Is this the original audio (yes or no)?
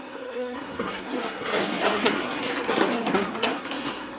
no